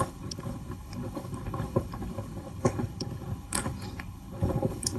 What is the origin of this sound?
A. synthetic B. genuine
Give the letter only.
A